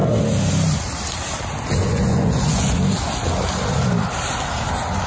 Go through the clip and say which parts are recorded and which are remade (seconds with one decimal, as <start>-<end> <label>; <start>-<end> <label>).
0.0-1.8 recorded; 1.8-2.7 remade; 2.7-5.1 recorded